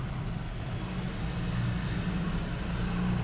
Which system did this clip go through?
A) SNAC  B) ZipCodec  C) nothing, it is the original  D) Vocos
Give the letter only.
C